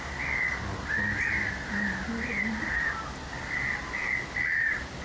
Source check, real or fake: real